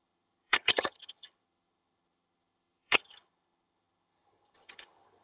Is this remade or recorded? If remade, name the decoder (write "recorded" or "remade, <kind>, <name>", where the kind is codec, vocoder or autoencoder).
remade, vocoder, HiFi-GAN